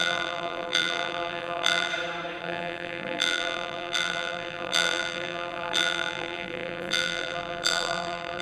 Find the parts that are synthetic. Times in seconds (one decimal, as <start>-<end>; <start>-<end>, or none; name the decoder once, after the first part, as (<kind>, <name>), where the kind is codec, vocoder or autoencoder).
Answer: 0.0-1.9 (vocoder, BigVGAN v2); 2.4-8.4

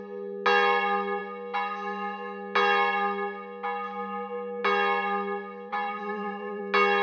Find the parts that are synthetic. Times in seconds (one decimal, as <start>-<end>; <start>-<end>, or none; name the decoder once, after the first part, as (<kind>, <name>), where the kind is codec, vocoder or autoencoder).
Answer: 5.7-6.6 (vocoder, BigVGAN v2)

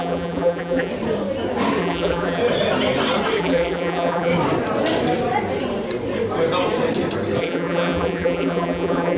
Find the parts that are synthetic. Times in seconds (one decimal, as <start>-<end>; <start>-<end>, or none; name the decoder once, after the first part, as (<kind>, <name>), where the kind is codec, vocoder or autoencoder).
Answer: 0.0-0.9 (vocoder, BigVGAN v2); 1.8-2.4; 3.4-4.3; 7.4-9.2

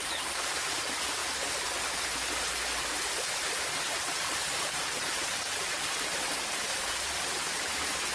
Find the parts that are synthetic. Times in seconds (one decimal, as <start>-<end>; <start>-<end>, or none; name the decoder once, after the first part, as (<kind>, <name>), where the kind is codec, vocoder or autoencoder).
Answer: 4.4-5.7 (vocoder, BigVGAN v2); 6.7-7.6

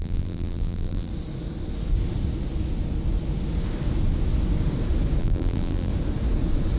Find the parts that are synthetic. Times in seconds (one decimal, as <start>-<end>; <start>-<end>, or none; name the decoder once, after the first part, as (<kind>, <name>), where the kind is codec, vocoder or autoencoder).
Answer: 0.0-1.1 (vocoder, BigVGAN v2); 5.2-5.9

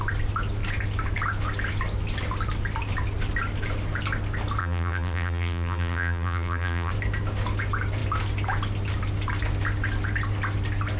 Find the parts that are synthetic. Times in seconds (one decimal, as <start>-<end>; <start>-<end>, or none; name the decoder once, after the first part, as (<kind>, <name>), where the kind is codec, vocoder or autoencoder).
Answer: 4.6-6.9 (vocoder, BigVGAN v2)

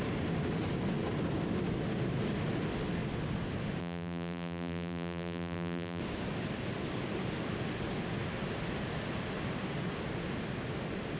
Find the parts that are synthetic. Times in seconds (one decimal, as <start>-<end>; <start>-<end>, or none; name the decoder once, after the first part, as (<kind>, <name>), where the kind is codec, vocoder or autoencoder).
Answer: 3.8-6.0 (vocoder, BigVGAN v2)